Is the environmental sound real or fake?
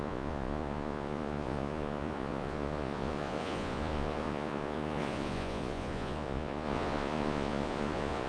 fake